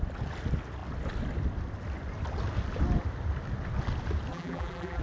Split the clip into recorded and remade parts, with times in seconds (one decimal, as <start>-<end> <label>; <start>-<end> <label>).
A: 0.0-4.3 recorded; 4.3-5.0 remade